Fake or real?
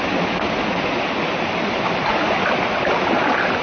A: real